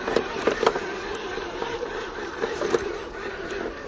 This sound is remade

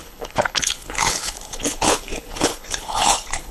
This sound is remade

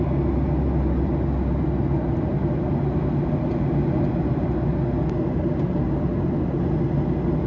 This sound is recorded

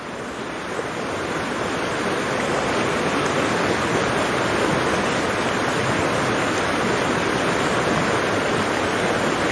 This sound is recorded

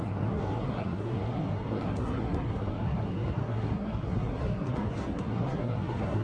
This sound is remade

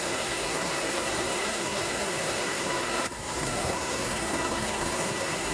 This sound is remade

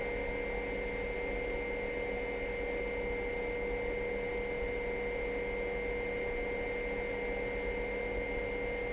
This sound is recorded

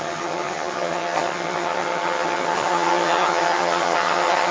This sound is remade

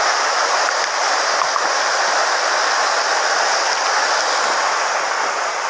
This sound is recorded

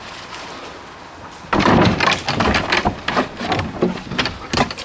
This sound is recorded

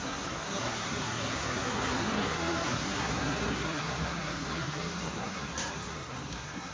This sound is remade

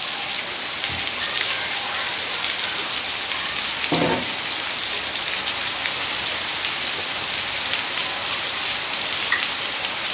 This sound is recorded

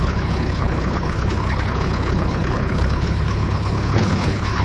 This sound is remade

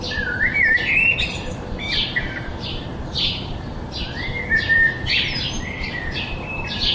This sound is remade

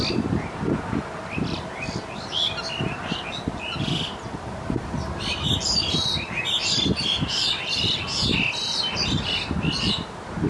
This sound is recorded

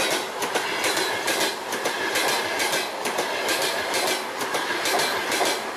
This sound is recorded